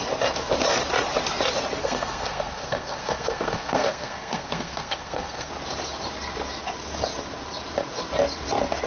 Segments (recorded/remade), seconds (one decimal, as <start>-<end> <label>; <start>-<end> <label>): 0.0-1.8 recorded; 1.8-5.5 remade; 5.5-8.9 recorded